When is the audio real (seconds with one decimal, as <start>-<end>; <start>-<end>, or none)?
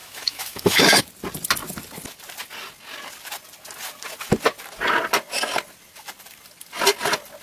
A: 1.0-7.4